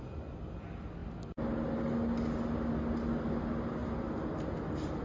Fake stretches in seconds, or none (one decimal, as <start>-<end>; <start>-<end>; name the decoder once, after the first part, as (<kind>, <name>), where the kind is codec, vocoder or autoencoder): none